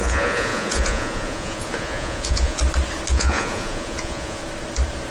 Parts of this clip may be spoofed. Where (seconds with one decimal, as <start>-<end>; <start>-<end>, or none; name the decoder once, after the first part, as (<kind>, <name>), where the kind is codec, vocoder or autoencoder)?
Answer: 0.0-2.6 (vocoder, Vocos); 3.1-4.4